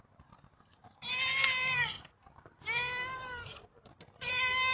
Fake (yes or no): no